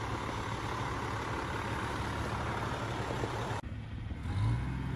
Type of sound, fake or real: real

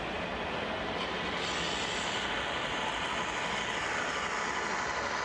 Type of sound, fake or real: real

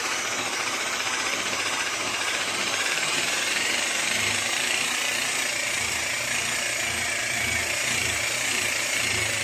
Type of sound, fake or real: fake